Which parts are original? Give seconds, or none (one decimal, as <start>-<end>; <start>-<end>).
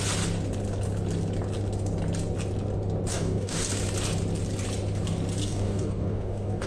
0.0-3.1; 3.7-5.4